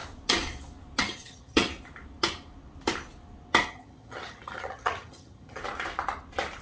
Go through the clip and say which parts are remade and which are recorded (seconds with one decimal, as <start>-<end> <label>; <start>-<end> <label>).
0.0-1.0 recorded; 1.0-1.7 remade; 1.7-3.7 recorded; 3.7-5.6 remade; 5.6-6.6 recorded